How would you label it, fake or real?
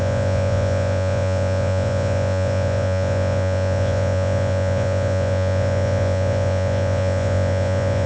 fake